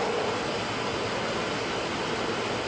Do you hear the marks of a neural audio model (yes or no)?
no